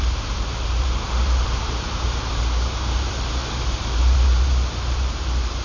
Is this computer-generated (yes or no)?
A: yes